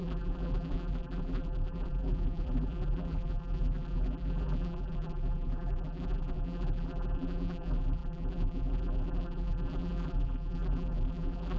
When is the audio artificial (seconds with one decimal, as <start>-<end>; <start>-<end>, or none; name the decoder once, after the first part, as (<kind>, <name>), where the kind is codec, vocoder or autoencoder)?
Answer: 0.0-11.6 (vocoder, BigVGAN v2)